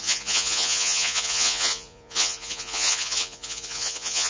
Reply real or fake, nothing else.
fake